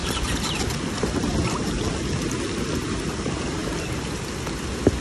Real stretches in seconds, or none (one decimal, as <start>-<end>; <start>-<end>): 1.8-3.6; 4.3-5.0